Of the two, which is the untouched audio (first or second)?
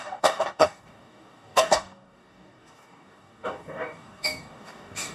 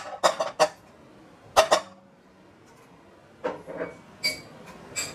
second